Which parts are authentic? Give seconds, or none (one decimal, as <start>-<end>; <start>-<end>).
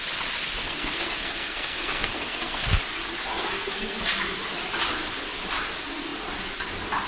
0.0-0.6; 2.8-3.3; 4.0-7.1